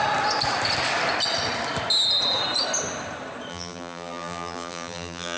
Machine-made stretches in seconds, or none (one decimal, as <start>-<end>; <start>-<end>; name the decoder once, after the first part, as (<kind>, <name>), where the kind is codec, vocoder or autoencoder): 3.5-5.4 (vocoder, BigVGAN v2)

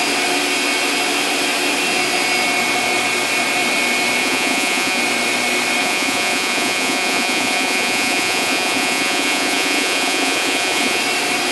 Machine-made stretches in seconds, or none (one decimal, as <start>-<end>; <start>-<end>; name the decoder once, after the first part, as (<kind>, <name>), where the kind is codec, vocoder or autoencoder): 4.2-5.0 (vocoder, Vocos); 5.8-11.0